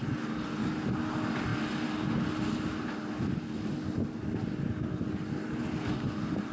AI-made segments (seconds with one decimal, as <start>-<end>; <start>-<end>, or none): none